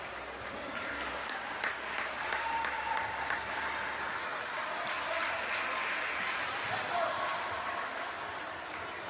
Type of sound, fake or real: real